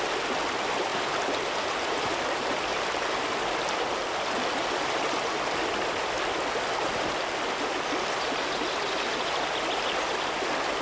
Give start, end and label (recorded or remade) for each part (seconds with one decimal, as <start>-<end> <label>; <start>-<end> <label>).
0.0-0.9 recorded; 0.9-2.0 remade; 2.0-10.8 recorded